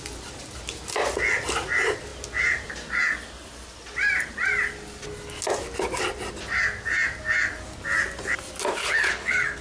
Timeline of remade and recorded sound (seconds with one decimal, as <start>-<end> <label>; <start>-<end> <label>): 0.0-8.8 recorded; 8.8-9.6 remade